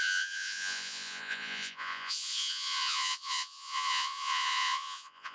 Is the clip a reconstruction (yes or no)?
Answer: yes